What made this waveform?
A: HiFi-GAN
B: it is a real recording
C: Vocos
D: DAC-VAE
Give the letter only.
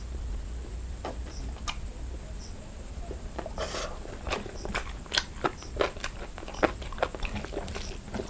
B